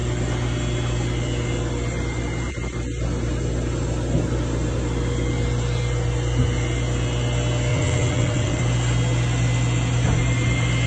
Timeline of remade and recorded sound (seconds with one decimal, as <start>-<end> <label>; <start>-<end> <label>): 0.0-7.7 recorded; 7.7-8.6 remade; 8.6-10.9 recorded